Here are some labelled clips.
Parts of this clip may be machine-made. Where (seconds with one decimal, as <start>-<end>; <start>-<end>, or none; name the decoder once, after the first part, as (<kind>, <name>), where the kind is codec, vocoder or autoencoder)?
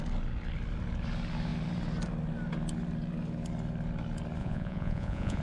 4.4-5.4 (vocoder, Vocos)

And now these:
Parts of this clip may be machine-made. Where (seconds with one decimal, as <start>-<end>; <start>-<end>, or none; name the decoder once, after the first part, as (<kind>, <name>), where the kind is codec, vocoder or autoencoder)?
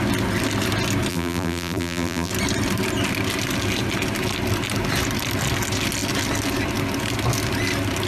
1.1-2.3 (vocoder, BigVGAN v2)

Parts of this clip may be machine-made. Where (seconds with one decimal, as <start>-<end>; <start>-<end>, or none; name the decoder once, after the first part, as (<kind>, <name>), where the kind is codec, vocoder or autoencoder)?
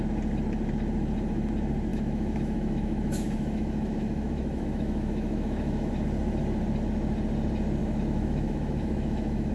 1.9-5.9 (autoencoder, DAC-VAE); 7.8-9.5